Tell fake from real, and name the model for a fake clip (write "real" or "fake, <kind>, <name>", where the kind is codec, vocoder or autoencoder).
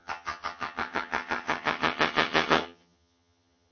fake, vocoder, HiFi-GAN